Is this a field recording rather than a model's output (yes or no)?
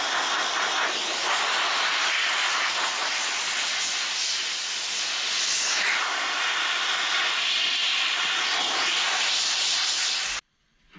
yes